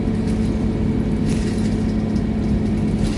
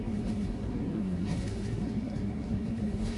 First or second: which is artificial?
second